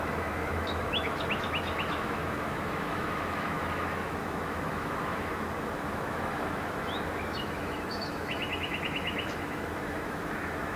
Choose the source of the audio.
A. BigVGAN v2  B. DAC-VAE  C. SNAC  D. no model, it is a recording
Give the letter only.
B